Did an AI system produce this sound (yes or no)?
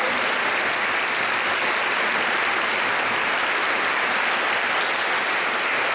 no